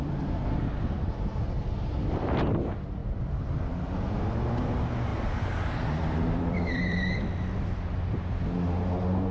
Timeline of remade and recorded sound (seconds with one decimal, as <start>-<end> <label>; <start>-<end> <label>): 0.0-3.0 recorded; 3.0-3.9 remade; 3.9-5.1 recorded; 5.1-7.2 remade; 7.2-9.3 recorded